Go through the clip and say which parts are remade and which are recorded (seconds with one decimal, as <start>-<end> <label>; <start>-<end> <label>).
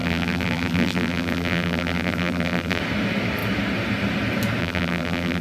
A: 0.0-2.8 remade; 2.8-4.6 recorded; 4.6-5.4 remade